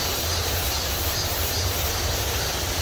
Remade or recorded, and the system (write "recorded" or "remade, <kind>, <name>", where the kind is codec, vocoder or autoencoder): recorded